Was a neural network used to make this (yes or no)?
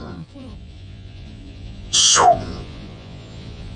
yes